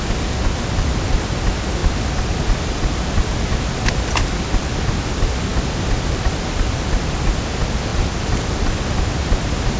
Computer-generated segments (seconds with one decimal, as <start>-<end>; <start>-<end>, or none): none